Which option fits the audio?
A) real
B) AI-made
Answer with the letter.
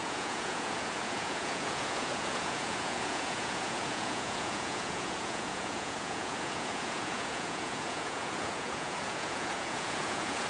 B